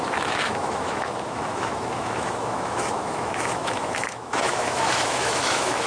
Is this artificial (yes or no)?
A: yes